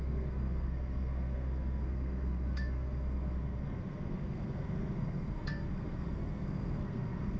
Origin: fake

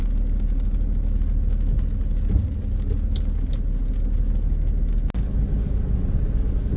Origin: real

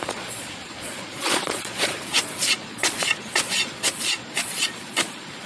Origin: fake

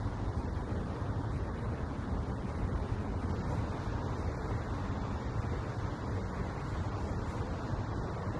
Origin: fake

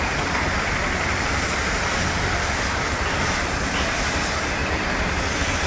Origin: real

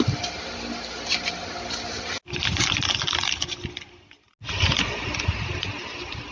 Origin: real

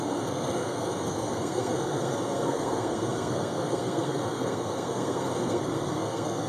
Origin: fake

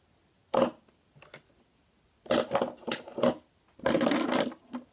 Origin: real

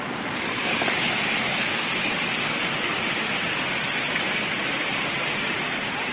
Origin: real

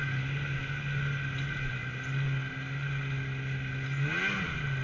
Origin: real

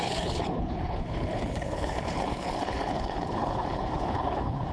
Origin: fake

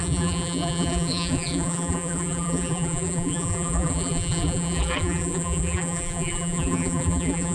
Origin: fake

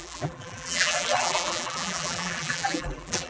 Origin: fake